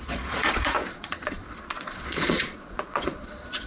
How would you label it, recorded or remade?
remade